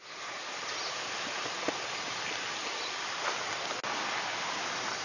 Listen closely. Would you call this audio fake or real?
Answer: real